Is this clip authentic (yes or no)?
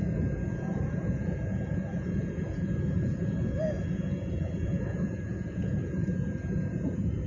no